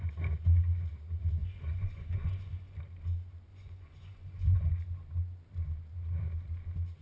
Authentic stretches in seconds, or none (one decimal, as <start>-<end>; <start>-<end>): 0.0-1.4; 2.8-3.5; 4.7-7.0